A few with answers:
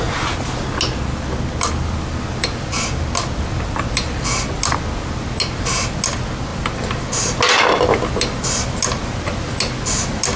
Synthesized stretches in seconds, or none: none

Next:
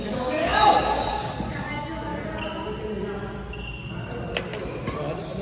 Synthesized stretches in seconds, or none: 0.0-2.1 (codec, DAC)

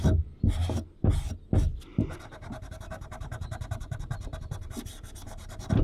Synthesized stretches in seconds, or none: 1.9-5.8 (vocoder, BigVGAN v2)

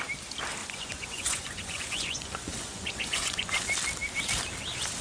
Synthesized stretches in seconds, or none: 0.6-3.6 (vocoder, Vocos)

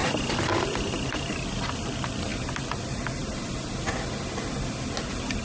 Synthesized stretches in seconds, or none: none

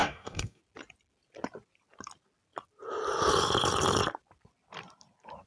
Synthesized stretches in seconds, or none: 0.0-0.6 (codec, DAC)

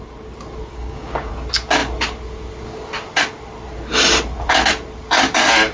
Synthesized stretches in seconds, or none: 0.7-1.3 (codec, DAC)

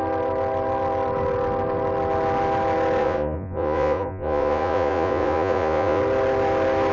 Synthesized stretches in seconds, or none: 3.0-6.0 (vocoder, Vocos)